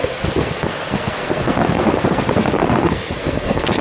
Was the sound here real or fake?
fake